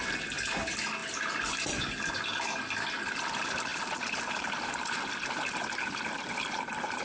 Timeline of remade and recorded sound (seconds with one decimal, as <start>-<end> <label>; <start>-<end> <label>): 0.0-7.0 recorded